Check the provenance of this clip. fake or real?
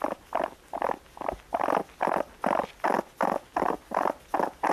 real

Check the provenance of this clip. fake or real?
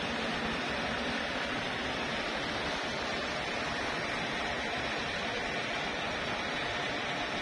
real